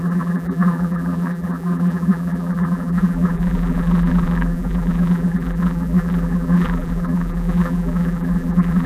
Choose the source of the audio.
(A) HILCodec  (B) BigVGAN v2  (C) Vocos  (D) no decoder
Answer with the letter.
B